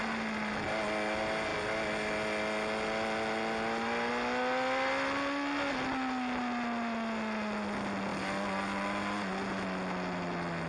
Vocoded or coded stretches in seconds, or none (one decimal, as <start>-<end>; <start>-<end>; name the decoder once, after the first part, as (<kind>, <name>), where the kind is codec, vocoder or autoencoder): none